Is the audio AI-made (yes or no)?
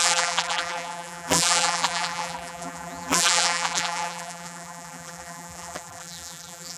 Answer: yes